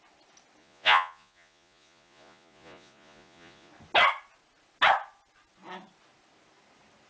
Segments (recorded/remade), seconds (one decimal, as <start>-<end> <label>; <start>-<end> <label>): 0.0-0.6 recorded; 0.6-3.7 remade; 3.7-7.1 recorded